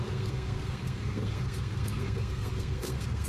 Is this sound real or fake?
fake